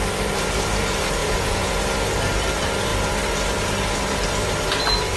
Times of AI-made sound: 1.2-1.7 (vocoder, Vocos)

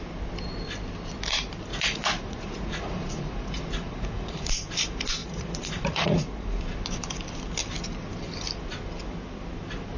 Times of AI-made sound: 1.7-4.5 (vocoder, Vocos); 5.2-6.6